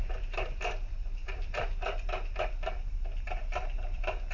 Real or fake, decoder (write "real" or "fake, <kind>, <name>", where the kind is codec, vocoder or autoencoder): fake, vocoder, BigVGAN v2